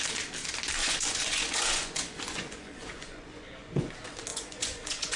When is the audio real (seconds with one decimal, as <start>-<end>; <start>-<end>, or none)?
0.0-0.8; 3.9-4.3